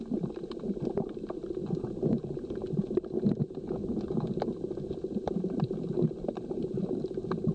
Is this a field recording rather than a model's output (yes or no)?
yes